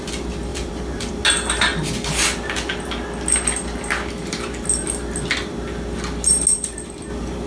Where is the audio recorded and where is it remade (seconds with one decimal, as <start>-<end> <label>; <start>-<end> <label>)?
0.0-0.5 recorded; 0.5-1.1 remade; 1.1-6.5 recorded; 6.5-7.1 remade; 7.1-7.5 recorded